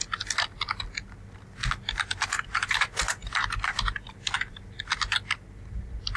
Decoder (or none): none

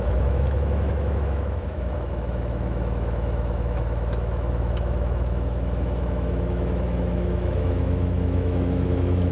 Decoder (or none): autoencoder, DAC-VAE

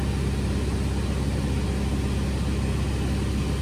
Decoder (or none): none